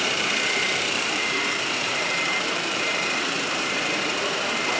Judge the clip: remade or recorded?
remade